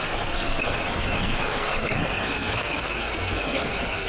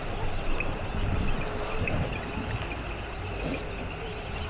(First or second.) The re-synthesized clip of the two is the first